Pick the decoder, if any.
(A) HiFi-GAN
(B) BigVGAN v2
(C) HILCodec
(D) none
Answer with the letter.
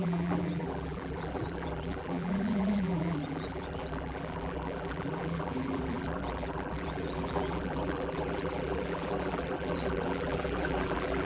B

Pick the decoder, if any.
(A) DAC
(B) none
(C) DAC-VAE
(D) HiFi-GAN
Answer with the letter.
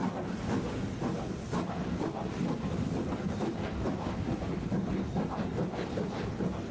B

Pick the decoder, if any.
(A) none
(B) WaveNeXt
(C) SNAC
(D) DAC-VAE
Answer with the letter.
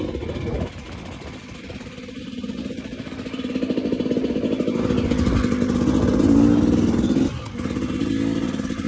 A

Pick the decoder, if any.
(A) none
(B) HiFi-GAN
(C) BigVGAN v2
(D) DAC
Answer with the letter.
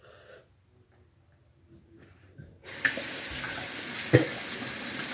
A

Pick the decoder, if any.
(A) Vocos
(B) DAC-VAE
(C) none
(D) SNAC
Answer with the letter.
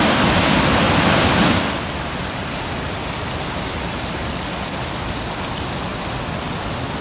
C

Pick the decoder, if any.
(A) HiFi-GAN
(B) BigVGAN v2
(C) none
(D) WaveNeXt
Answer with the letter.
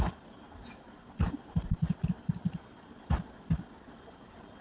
C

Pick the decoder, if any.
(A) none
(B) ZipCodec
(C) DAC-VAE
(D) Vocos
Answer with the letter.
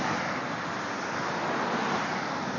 A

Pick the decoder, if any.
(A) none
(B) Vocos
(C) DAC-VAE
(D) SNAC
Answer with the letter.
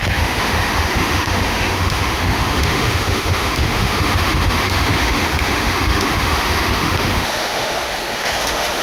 C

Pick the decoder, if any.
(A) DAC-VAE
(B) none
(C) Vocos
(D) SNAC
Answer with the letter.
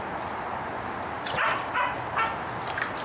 B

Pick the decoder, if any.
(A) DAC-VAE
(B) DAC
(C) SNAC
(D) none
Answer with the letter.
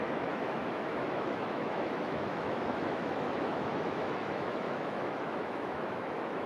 A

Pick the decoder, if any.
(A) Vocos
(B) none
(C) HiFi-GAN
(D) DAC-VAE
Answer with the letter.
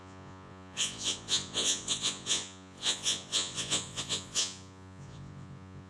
A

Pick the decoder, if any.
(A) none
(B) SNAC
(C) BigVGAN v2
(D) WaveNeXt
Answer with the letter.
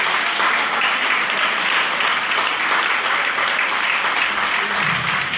C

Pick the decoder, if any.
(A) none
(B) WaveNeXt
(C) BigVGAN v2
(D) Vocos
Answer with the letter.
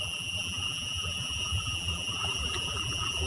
C